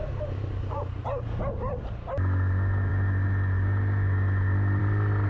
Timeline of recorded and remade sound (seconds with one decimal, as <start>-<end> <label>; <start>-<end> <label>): 0.0-5.3 recorded